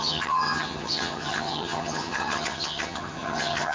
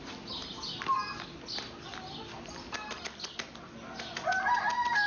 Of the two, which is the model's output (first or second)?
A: first